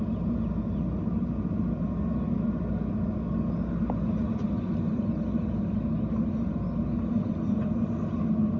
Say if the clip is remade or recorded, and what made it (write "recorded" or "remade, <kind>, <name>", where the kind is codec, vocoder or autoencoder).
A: recorded